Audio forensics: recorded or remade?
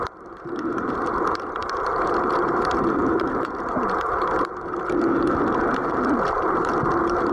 remade